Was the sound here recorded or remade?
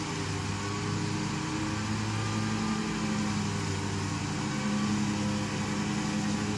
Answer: recorded